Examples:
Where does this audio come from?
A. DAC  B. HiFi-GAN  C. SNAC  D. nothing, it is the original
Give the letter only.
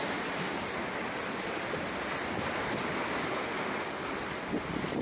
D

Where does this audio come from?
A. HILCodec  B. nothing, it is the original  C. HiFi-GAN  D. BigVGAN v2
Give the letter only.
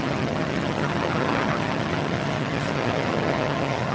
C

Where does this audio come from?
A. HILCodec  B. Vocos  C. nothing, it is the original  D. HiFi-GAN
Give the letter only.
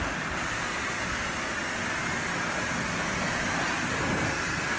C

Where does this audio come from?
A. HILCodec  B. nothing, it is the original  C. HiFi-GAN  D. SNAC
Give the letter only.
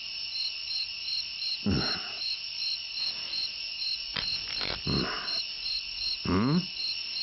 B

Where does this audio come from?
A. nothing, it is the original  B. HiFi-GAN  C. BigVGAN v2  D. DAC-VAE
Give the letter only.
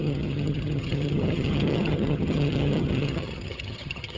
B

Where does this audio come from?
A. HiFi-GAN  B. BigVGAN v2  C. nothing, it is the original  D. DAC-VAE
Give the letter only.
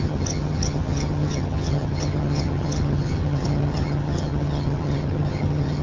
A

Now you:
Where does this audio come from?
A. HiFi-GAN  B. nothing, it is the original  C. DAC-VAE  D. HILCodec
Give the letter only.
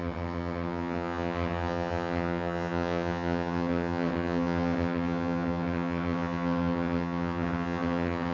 A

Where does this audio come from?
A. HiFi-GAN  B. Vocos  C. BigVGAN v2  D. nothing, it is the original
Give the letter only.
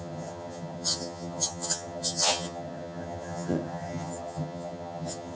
A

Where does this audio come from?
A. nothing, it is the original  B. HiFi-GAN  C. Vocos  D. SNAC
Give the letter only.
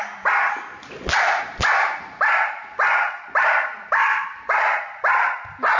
A